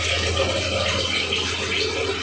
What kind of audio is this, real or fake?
real